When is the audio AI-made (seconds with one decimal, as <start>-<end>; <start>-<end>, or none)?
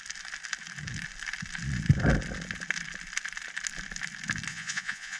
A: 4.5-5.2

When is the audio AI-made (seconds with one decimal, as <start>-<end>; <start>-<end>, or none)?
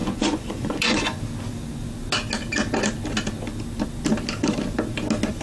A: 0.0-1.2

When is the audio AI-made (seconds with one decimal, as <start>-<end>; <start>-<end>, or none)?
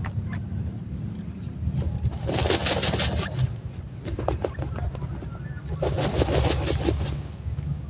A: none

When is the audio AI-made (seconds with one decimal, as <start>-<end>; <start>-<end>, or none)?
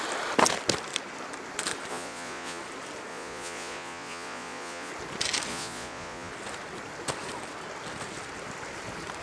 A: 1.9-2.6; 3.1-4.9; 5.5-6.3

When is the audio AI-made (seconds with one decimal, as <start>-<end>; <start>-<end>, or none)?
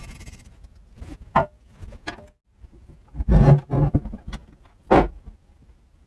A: none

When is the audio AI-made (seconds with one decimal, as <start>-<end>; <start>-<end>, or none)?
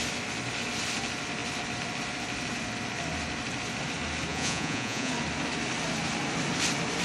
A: 4.3-5.1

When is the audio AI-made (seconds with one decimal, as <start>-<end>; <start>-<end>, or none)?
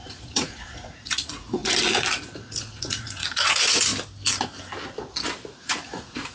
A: 0.0-1.6; 2.5-3.9; 5.6-6.3